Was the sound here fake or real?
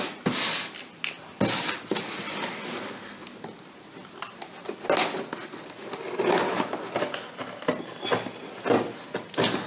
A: real